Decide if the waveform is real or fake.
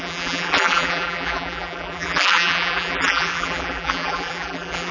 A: fake